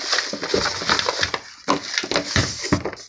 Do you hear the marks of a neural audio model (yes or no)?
no